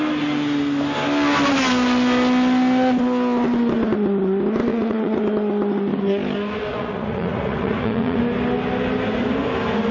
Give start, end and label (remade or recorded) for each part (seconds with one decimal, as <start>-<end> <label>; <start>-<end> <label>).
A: 0.0-4.7 recorded; 4.7-5.2 remade; 5.2-6.7 recorded; 6.7-8.2 remade; 8.2-9.9 recorded